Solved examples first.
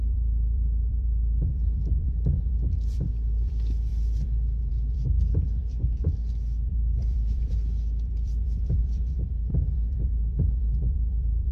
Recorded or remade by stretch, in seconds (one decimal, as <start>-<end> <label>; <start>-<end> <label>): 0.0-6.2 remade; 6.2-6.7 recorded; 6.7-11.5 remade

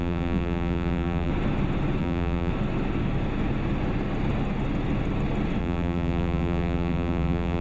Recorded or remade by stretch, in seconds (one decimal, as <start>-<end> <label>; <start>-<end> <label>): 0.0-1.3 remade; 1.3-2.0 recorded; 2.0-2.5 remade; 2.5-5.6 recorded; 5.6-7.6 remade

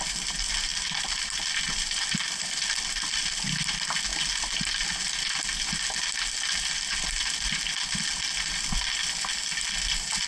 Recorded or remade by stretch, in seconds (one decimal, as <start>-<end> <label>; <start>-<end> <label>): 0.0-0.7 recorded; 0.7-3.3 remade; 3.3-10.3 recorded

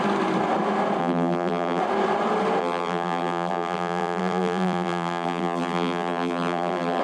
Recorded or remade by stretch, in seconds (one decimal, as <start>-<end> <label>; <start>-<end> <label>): 0.0-1.0 recorded; 1.0-1.8 remade; 1.8-2.6 recorded; 2.6-7.0 remade